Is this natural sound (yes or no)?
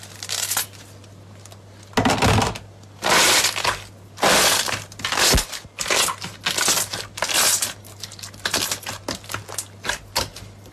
yes